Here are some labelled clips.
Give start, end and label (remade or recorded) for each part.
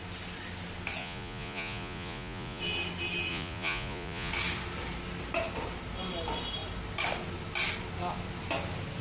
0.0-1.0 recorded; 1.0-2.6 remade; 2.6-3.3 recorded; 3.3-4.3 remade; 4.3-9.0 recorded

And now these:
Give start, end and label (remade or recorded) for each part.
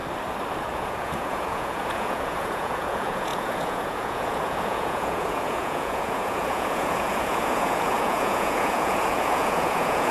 0.0-0.6 recorded; 0.6-10.1 remade